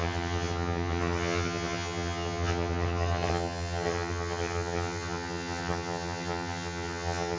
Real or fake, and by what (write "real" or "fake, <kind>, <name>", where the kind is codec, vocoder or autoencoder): fake, vocoder, HiFi-GAN